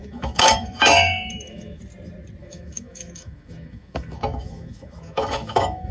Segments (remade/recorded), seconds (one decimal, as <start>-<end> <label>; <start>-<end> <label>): 0.0-1.8 remade; 1.8-2.4 recorded; 2.4-5.9 remade